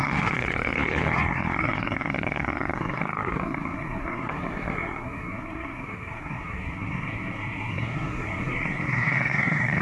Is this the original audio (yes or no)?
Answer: no